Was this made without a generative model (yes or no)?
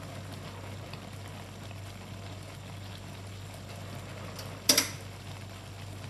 yes